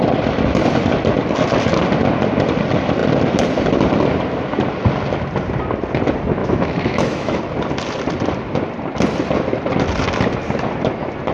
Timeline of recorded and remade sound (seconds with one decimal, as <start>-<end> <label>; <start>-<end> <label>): 0.0-6.4 recorded; 6.4-7.4 remade; 7.4-11.3 recorded